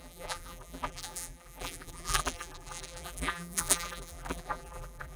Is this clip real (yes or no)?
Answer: no